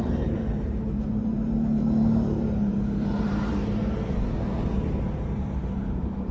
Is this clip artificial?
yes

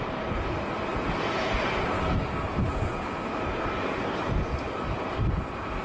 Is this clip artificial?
no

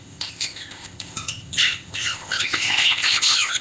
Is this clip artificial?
yes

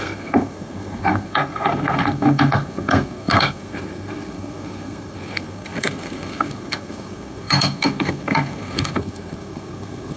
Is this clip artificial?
yes